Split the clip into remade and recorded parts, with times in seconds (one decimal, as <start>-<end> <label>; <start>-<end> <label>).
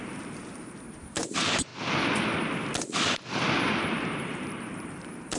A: 0.0-1.7 remade; 1.7-3.8 recorded; 3.8-5.4 remade